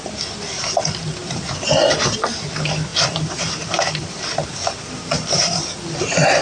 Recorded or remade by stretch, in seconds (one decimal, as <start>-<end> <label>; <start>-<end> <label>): 0.0-1.2 recorded; 1.2-1.9 remade; 1.9-2.9 recorded; 2.9-4.1 remade; 4.1-4.5 recorded; 4.5-5.6 remade; 5.6-6.4 recorded